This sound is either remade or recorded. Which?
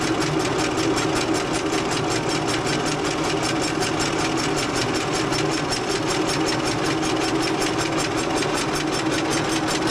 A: recorded